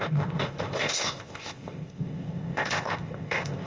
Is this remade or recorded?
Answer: remade